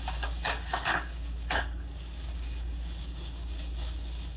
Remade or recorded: remade